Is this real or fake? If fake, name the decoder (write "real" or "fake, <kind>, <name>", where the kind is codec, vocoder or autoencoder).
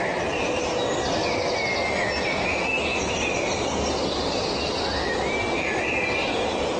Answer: real